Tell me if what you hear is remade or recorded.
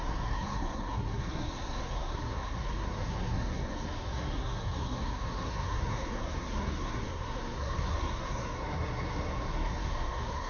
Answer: remade